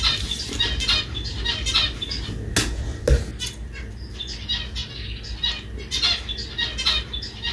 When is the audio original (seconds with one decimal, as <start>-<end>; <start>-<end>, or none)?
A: 0.0-7.5